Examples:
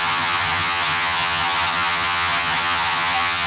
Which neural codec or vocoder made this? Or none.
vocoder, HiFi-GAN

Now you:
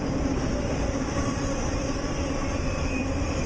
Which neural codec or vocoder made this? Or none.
vocoder, BigVGAN v2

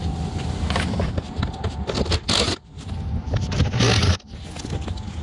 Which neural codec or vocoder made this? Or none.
none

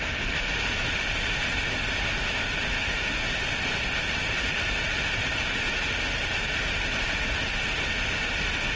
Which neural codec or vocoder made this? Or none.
none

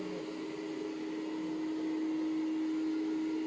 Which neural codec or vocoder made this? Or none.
none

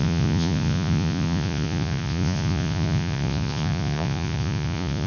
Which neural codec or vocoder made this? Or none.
vocoder, Vocos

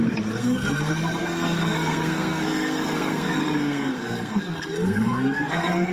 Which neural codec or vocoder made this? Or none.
codec, SNAC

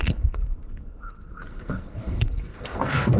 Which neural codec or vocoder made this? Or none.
codec, SNAC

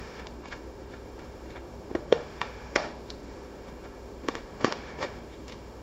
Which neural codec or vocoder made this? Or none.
autoencoder, DAC-VAE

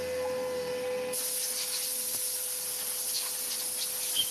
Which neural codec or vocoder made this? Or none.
none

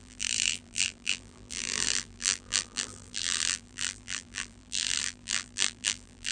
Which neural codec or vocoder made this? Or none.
vocoder, BigVGAN v2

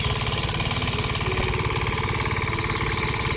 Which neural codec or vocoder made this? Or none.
none